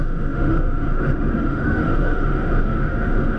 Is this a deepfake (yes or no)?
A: yes